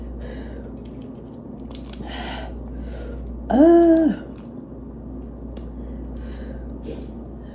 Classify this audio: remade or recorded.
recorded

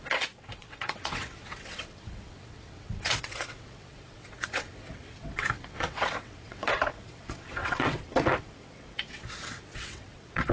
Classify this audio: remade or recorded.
remade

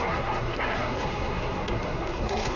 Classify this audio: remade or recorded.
remade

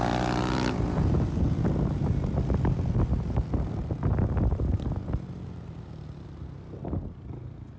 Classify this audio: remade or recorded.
recorded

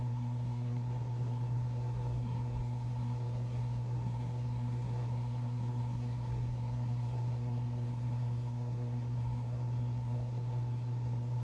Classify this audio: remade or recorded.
remade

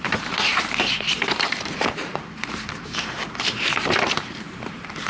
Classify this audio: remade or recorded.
remade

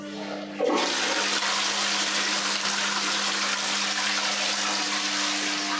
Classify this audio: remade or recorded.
recorded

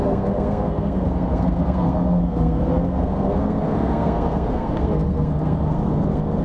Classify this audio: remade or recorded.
remade